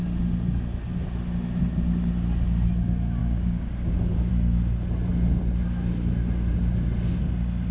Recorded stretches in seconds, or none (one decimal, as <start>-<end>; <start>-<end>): 0.0-3.2; 4.3-7.7